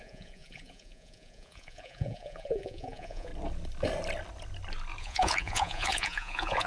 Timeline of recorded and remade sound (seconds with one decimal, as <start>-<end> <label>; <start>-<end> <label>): 0.0-3.3 remade; 3.3-5.0 recorded; 5.0-6.7 remade